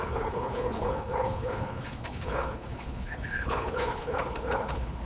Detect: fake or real fake